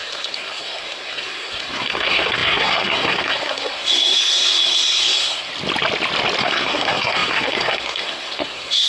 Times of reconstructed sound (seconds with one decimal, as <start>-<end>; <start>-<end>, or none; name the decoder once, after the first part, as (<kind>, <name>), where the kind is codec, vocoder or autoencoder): 0.0-5.5 (codec, SNAC); 6.4-8.9